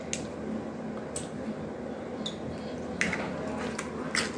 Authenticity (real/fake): real